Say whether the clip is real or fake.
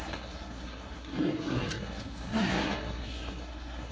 fake